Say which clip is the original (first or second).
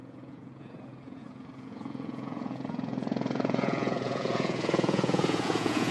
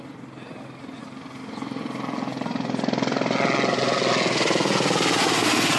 second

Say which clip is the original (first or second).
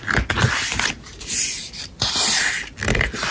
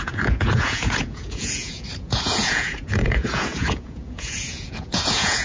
first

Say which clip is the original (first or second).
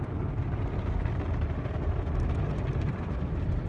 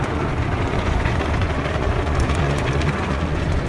first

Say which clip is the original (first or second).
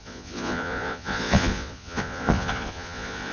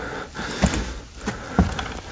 second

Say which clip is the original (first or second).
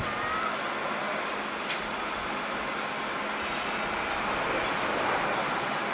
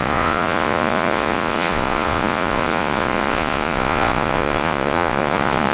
first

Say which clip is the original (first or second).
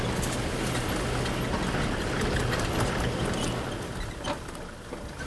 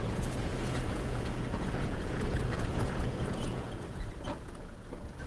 first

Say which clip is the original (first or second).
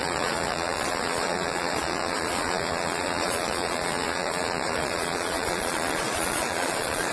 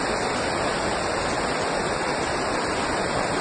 second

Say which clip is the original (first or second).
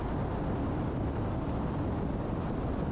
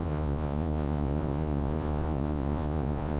first